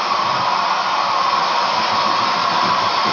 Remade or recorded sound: remade